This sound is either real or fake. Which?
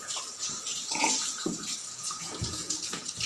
fake